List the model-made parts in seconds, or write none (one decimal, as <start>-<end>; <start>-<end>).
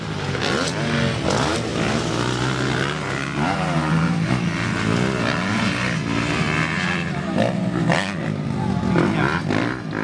none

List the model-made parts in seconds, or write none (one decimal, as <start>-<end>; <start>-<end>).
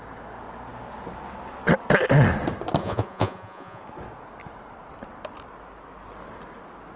2.8-3.8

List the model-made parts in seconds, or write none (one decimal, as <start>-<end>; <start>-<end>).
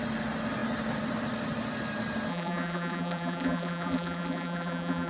2.3-5.1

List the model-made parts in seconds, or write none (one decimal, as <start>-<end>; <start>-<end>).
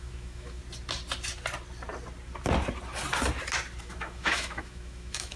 0.0-0.6; 3.8-5.4